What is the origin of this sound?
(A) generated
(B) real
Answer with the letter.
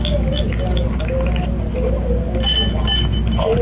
B